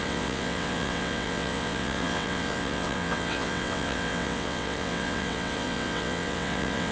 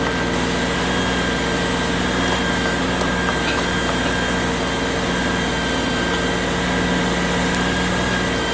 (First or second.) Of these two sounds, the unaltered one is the second